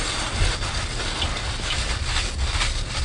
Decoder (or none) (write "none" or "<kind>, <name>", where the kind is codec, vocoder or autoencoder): none